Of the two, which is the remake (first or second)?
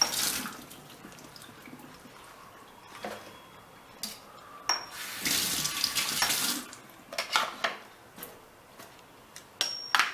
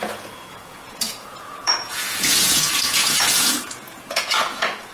second